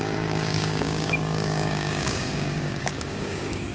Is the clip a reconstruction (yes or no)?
yes